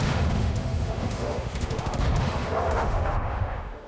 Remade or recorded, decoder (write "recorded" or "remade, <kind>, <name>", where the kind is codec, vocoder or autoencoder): remade, autoencoder, DAC-VAE